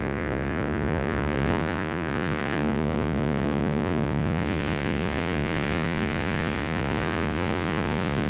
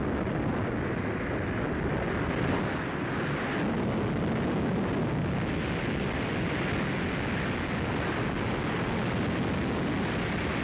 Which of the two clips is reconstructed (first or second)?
first